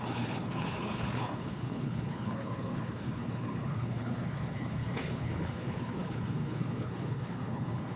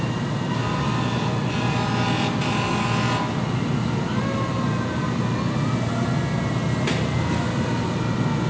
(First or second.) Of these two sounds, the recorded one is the second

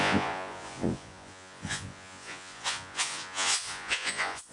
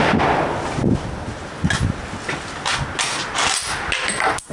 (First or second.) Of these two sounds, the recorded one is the second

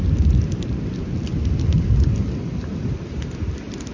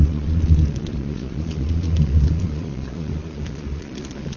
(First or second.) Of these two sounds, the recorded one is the first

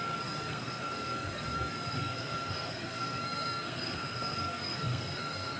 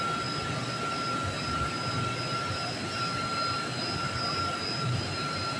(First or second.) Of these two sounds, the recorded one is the second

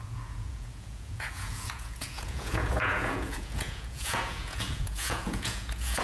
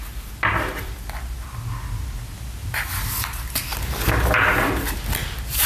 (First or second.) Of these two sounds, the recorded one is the second